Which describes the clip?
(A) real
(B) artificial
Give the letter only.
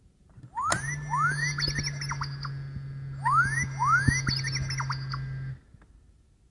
A